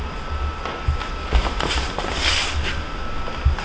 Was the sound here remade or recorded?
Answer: recorded